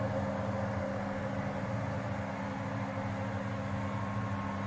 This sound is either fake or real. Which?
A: real